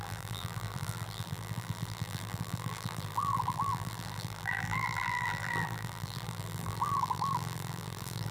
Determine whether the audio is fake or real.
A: fake